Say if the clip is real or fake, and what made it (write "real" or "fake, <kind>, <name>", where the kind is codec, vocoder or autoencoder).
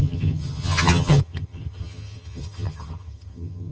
fake, vocoder, HiFi-GAN